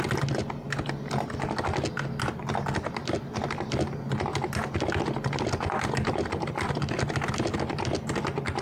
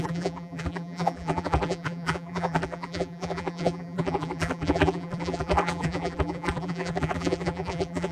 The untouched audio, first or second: first